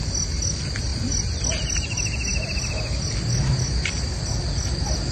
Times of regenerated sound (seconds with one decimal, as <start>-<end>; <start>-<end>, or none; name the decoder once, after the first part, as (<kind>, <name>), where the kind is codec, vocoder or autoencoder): none